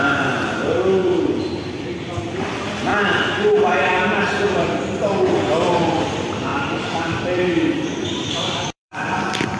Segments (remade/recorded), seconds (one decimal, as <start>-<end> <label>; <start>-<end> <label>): 0.0-1.0 recorded; 1.0-1.5 remade; 1.5-2.9 recorded; 2.9-5.1 remade; 5.1-6.5 recorded; 6.5-9.2 remade; 9.2-9.6 recorded